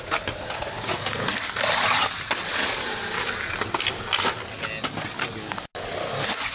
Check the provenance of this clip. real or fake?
real